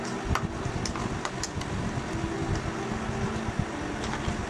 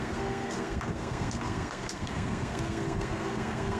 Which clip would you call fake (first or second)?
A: second